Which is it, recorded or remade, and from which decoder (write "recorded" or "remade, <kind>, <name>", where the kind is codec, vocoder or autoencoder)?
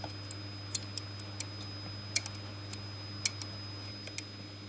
recorded